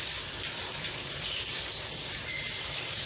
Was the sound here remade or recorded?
recorded